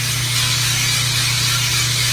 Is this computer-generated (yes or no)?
no